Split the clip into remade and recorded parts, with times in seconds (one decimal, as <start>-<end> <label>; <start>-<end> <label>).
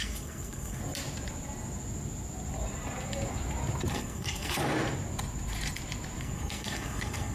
0.0-0.8 remade; 0.8-3.9 recorded; 3.9-4.6 remade; 4.6-6.2 recorded; 6.2-7.3 remade